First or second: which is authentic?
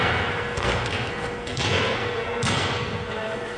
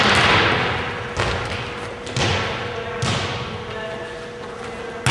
second